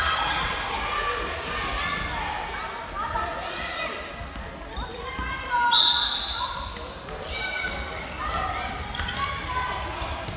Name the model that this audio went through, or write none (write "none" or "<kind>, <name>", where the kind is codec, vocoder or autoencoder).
none